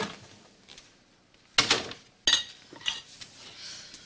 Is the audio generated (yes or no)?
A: no